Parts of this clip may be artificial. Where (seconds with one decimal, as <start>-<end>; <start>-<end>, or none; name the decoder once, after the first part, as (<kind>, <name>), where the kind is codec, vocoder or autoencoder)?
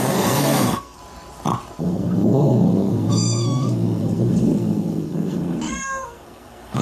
0.0-1.0 (codec, SNAC); 1.8-6.8